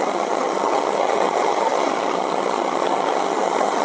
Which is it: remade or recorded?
remade